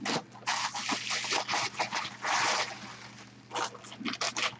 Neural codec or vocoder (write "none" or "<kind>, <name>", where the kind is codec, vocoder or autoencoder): none